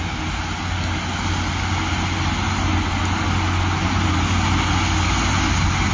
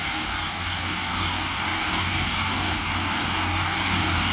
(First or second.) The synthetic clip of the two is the second